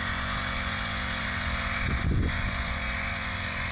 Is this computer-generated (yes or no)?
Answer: yes